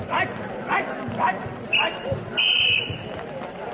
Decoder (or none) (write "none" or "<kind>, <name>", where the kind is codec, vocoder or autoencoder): vocoder, BigVGAN v2